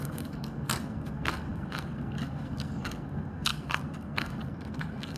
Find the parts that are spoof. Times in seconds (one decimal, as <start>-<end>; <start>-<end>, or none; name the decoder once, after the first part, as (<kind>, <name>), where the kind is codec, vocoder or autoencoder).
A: 0.0-5.2 (codec, SNAC)